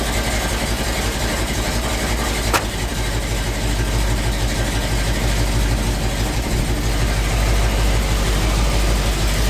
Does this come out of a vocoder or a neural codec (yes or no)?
no